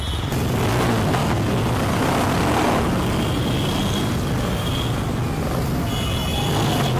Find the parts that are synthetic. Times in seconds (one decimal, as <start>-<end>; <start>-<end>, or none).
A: none